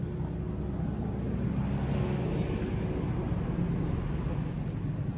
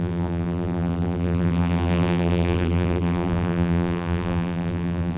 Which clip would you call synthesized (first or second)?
second